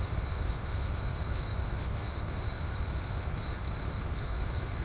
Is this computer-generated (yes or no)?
yes